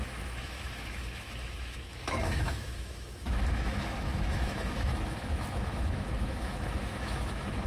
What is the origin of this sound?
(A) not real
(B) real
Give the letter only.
A